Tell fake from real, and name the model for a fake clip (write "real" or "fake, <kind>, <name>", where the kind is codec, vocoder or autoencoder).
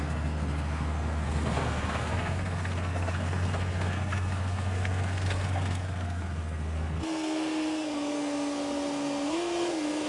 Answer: fake, codec, SNAC